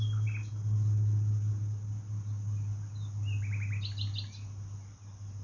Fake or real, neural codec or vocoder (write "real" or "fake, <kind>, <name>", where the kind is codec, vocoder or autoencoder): real